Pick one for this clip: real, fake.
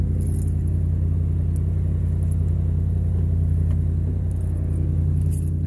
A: real